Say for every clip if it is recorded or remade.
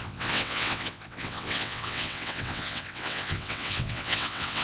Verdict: remade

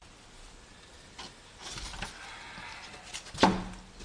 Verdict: recorded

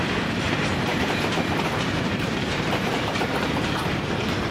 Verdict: remade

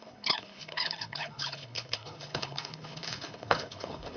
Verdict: remade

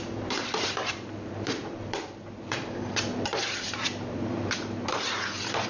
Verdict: remade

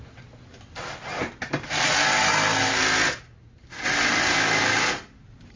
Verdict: recorded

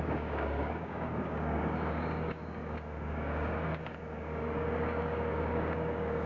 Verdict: remade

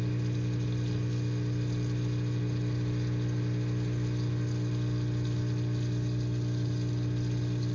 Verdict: recorded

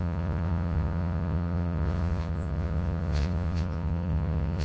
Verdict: remade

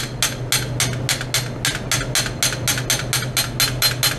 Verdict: recorded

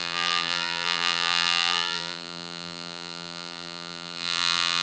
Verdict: remade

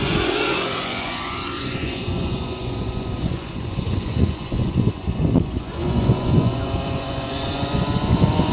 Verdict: remade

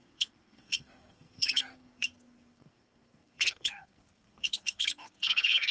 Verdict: remade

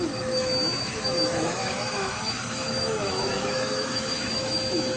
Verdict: remade